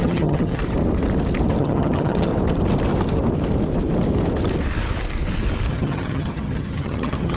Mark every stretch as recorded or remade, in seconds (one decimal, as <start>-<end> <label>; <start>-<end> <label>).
0.0-0.6 remade; 0.6-1.6 recorded; 1.6-2.3 remade; 2.3-5.7 recorded; 5.7-7.4 remade